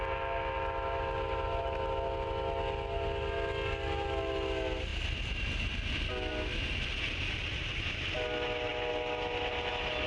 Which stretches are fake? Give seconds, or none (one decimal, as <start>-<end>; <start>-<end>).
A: none